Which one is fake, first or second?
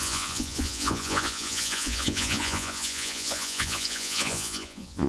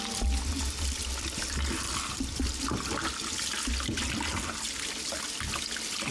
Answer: first